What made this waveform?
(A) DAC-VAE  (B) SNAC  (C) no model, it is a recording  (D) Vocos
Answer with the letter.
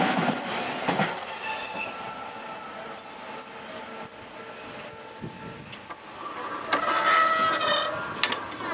C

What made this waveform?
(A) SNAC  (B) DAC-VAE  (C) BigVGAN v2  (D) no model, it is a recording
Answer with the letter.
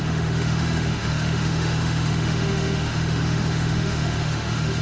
B